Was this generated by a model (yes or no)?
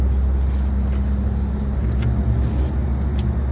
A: no